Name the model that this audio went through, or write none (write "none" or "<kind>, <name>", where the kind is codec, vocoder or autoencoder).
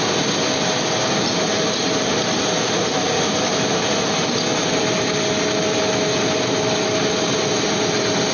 none